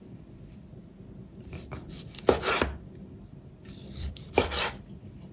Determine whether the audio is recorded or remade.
remade